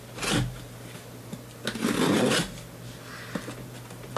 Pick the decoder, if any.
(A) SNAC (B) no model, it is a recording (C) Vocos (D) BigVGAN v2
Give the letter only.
B